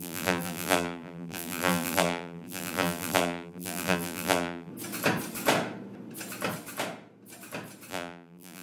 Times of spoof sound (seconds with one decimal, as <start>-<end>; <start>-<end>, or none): 0.0-4.7; 7.9-8.6